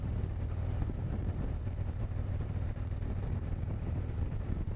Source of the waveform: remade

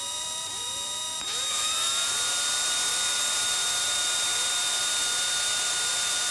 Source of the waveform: remade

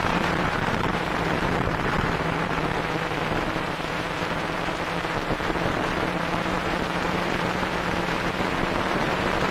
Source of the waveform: remade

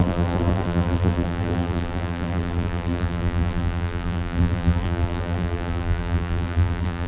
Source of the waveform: remade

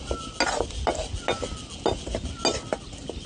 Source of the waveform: recorded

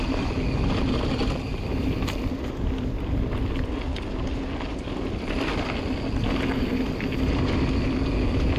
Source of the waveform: recorded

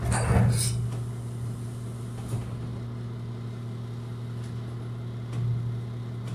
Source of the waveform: recorded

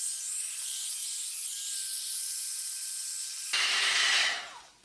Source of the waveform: recorded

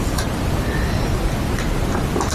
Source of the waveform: recorded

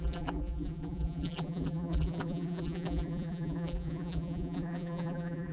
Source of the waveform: remade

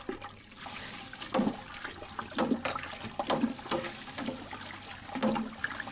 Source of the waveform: recorded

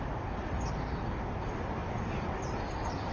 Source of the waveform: remade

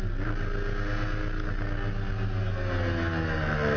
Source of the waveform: recorded